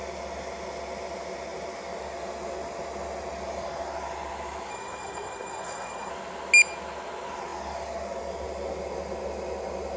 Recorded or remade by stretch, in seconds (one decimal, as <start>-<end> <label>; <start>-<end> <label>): 0.0-4.7 recorded; 4.7-6.1 remade; 6.1-10.0 recorded